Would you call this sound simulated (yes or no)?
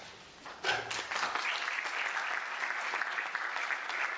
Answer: no